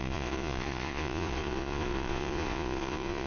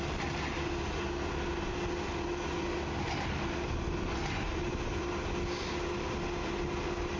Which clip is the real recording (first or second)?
second